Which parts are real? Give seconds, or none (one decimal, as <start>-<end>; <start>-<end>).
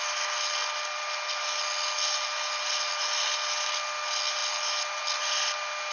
0.0-5.9